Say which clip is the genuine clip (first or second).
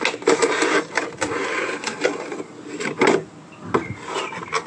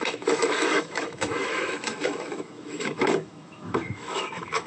first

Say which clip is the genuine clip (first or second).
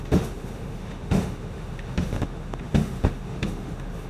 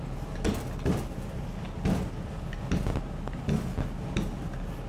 second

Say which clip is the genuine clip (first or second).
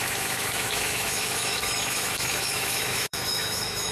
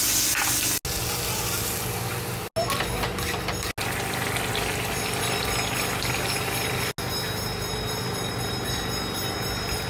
second